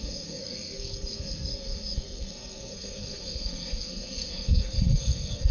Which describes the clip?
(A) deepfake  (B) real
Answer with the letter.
A